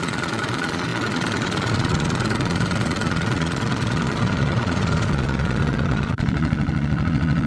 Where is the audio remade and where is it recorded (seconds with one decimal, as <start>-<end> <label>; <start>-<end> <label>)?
0.0-7.5 remade